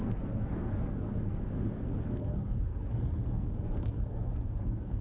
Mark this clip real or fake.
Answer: fake